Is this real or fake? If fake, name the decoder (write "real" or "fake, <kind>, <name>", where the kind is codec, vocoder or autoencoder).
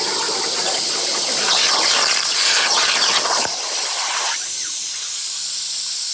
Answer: fake, vocoder, BigVGAN v2